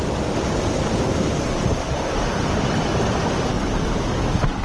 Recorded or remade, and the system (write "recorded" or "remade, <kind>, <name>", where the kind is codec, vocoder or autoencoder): recorded